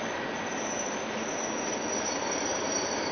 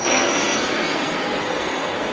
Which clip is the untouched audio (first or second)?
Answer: first